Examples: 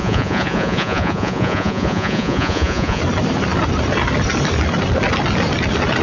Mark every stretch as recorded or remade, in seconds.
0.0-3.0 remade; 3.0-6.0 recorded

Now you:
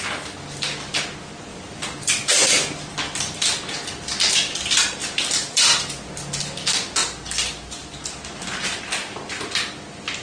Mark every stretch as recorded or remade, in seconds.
0.0-1.5 recorded; 1.5-2.4 remade; 2.4-5.0 recorded; 5.0-5.9 remade; 5.9-7.0 recorded; 7.0-8.4 remade; 8.4-10.2 recorded

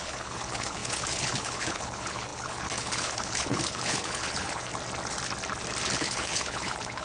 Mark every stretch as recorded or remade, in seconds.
0.0-4.7 remade; 4.7-6.0 recorded; 6.0-7.0 remade

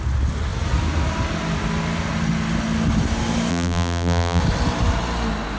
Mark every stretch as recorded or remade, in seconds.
0.0-3.5 recorded; 3.5-4.4 remade; 4.4-5.6 recorded

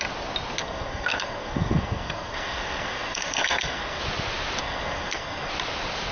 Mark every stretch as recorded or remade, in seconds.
0.0-0.6 recorded; 0.6-4.0 remade; 4.0-4.6 recorded; 4.6-5.5 remade; 5.5-6.1 recorded

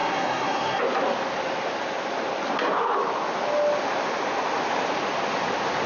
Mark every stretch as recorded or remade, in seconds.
0.0-0.8 remade; 0.8-5.9 recorded